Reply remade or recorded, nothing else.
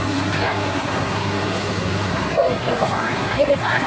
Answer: remade